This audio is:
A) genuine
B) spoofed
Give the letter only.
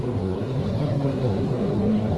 B